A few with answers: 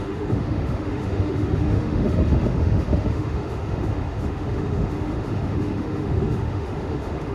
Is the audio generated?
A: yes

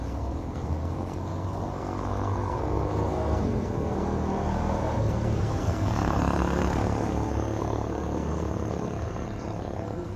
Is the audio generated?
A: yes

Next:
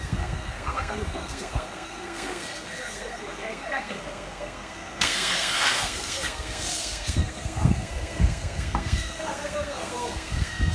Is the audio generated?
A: yes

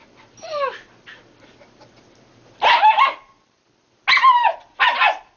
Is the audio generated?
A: no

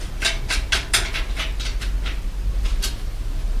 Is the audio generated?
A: no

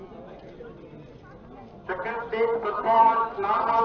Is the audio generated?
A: no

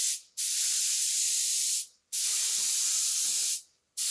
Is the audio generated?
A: no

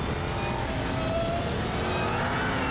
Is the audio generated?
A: no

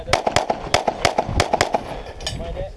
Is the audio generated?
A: no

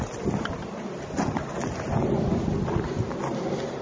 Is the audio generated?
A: no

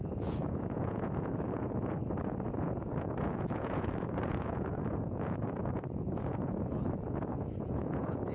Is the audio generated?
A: yes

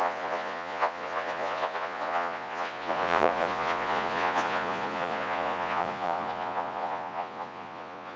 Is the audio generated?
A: yes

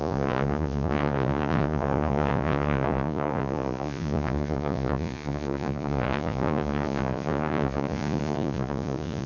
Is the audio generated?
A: yes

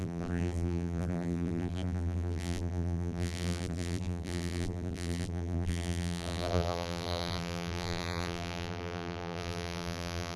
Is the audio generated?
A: yes